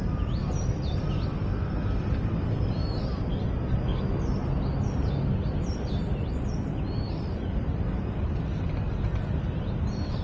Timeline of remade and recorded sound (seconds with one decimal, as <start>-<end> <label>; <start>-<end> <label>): 0.0-10.2 recorded